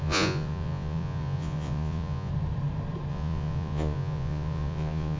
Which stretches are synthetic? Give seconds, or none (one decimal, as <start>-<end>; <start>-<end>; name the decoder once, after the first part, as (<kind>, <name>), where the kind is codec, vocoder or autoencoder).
0.0-2.3 (vocoder, Vocos); 3.1-5.2